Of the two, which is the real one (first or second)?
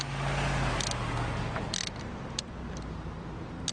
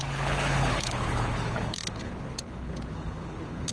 first